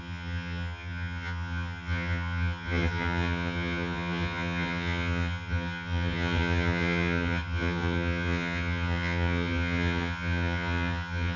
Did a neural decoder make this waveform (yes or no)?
yes